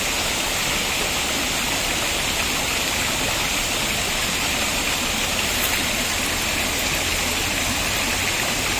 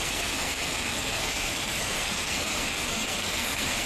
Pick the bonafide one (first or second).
first